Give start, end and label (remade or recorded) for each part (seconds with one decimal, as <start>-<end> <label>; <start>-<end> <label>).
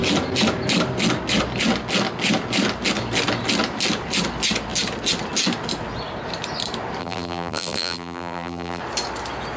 0.0-7.0 recorded; 7.0-8.8 remade; 8.8-9.6 recorded